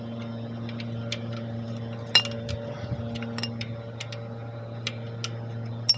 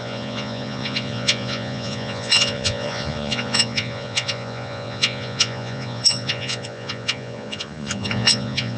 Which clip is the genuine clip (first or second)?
first